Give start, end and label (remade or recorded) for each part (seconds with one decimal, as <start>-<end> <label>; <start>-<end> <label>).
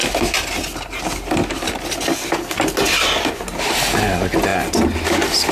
0.0-5.5 recorded